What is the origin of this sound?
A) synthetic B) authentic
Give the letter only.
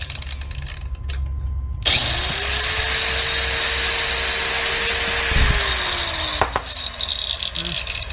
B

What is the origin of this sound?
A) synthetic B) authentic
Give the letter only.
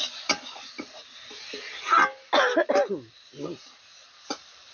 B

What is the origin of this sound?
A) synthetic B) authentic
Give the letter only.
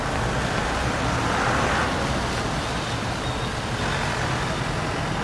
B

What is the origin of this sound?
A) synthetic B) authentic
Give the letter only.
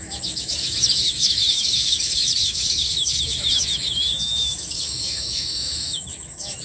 A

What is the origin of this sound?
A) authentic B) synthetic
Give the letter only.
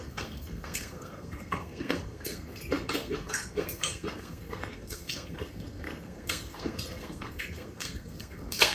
B